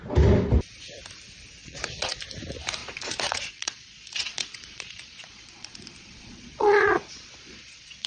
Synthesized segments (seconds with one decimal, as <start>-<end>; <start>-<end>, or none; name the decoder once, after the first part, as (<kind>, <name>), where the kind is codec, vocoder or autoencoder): 1.6-2.2 (vocoder, Vocos); 2.8-8.1

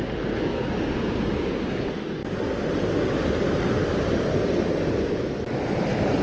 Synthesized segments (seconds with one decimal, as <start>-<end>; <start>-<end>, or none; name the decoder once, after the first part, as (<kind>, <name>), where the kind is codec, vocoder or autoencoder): 0.5-1.8 (codec, DAC)

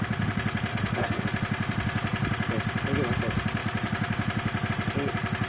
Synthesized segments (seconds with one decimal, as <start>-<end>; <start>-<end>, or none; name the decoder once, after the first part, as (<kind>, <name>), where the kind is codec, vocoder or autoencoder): 0.7-1.2 (autoencoder, DAC-VAE)

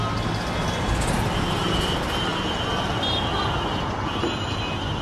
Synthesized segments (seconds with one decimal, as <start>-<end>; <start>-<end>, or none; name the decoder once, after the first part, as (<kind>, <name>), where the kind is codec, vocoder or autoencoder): none